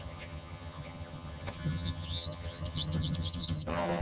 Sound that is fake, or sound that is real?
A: fake